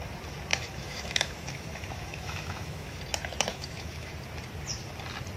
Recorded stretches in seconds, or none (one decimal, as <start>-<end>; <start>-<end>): 0.0-0.5; 3.0-3.5; 4.1-5.4